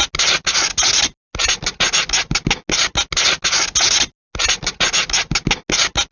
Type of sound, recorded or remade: recorded